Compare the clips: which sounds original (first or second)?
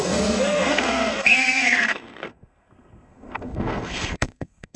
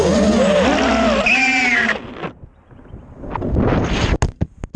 second